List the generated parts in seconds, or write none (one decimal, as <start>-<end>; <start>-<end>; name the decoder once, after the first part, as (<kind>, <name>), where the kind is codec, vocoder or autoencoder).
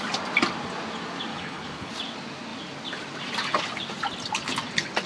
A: 1.3-1.9 (codec, HILCodec)